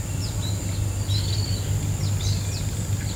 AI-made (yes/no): no